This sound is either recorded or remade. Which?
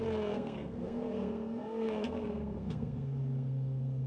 remade